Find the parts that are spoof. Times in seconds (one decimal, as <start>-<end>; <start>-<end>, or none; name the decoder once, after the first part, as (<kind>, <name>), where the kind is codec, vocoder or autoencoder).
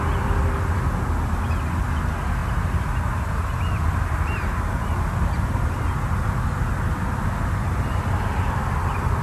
none